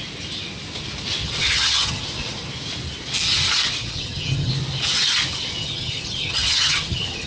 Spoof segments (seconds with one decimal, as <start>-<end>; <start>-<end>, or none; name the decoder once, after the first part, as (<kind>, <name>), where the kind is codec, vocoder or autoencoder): 1.2-2.0 (vocoder, HiFi-GAN); 3.8-4.5; 5.6-7.3